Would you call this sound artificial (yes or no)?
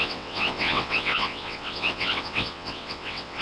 yes